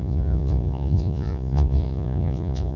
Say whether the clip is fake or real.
fake